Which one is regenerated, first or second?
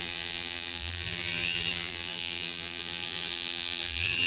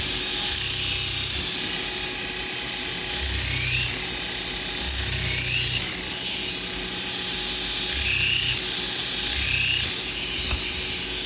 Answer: first